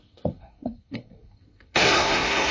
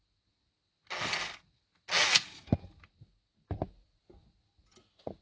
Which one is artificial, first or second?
first